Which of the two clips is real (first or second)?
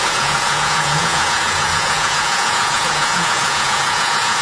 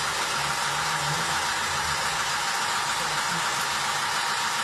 second